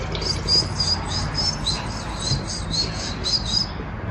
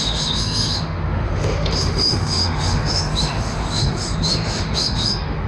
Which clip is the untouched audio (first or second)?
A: first